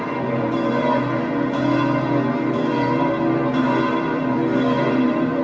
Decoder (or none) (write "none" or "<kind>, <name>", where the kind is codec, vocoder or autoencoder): vocoder, BigVGAN v2